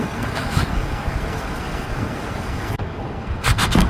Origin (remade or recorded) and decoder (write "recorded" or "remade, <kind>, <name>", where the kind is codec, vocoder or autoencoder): remade, codec, SNAC